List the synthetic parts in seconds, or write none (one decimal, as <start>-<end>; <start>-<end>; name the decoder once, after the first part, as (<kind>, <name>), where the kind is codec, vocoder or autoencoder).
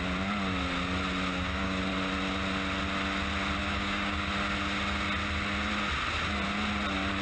1.3-1.8 (codec, DAC); 3.6-4.3